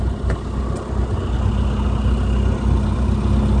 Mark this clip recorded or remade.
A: recorded